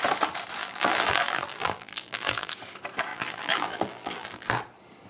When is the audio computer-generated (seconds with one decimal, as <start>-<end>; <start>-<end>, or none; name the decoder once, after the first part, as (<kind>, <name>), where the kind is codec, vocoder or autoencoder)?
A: 0.6-2.5 (vocoder, BigVGAN v2); 3.1-4.6